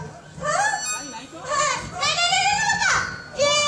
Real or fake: real